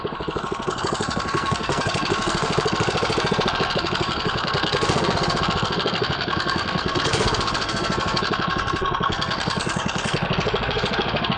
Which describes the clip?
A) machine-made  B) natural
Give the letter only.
A